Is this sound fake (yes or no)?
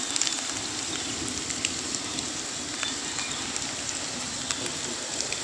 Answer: no